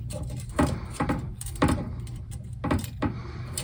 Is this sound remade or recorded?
remade